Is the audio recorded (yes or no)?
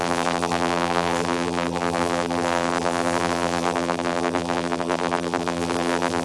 no